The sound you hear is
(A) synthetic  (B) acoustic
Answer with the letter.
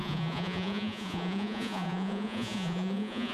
A